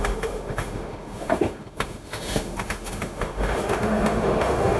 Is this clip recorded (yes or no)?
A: no